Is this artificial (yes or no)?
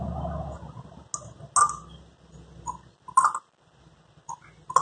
no